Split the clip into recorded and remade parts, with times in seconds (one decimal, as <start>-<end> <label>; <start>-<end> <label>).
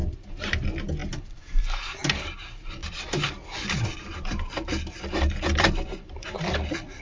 0.0-1.0 recorded; 1.0-1.5 remade; 1.5-2.8 recorded; 2.8-7.0 remade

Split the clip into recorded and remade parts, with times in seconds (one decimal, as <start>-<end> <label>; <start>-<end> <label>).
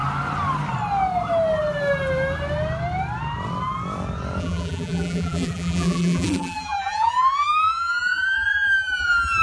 0.0-4.4 recorded; 4.4-9.4 remade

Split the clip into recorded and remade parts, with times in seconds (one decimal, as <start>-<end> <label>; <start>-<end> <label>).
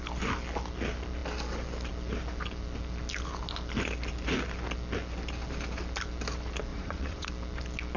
0.0-6.7 recorded; 6.7-7.3 remade; 7.3-8.0 recorded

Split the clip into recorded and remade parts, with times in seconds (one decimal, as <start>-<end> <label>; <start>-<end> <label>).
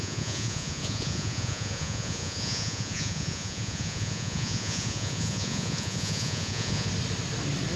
0.0-6.9 remade; 6.9-7.8 recorded